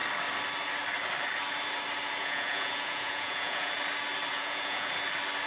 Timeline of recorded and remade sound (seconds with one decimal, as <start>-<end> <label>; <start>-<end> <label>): 0.0-2.2 recorded; 2.2-3.7 remade; 3.7-4.3 recorded; 4.3-4.9 remade; 4.9-5.5 recorded